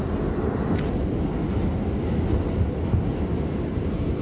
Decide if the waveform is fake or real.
real